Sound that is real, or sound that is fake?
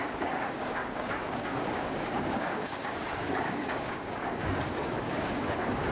fake